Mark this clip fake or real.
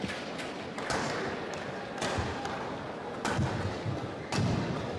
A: real